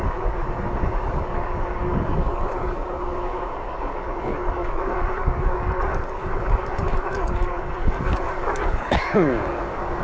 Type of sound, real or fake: fake